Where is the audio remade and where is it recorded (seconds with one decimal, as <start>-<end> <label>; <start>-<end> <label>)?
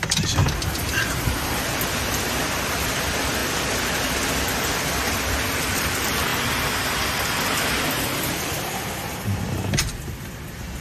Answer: 0.0-10.8 recorded